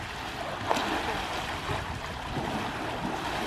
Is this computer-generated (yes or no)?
no